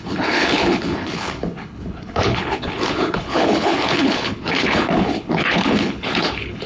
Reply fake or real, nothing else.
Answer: fake